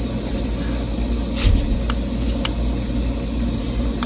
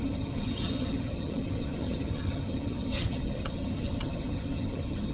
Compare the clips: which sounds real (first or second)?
first